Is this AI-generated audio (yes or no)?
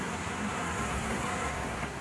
yes